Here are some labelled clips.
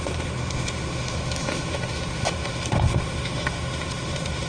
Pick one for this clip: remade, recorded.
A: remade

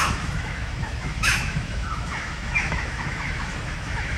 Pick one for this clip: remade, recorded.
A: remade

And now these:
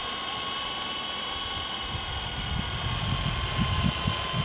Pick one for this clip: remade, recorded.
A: recorded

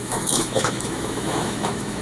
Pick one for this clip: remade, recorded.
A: remade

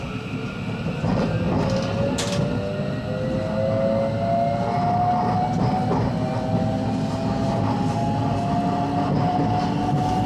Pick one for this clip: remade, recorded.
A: recorded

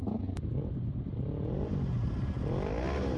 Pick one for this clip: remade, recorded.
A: recorded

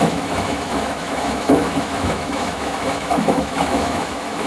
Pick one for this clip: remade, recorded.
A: remade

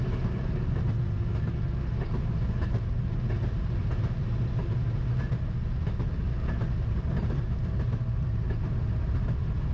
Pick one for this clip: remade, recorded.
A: recorded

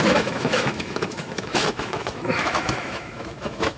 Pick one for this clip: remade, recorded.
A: remade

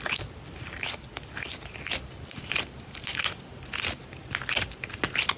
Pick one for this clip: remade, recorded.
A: recorded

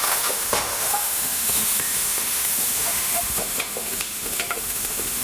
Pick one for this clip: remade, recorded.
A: remade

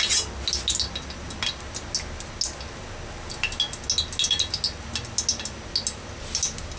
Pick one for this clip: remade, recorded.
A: recorded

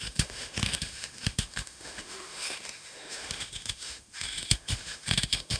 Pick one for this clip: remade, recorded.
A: remade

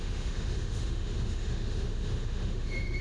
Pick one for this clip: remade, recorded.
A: remade